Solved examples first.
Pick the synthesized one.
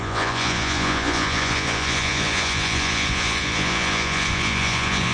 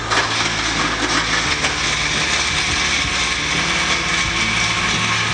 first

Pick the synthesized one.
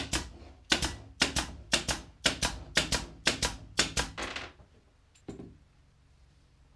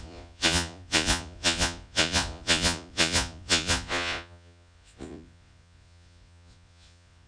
second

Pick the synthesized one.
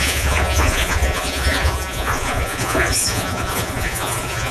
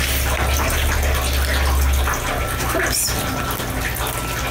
first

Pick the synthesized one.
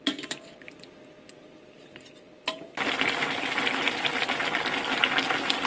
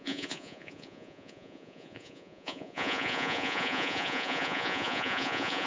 second